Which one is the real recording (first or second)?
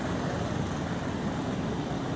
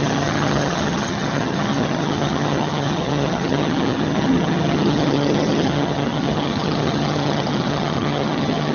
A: first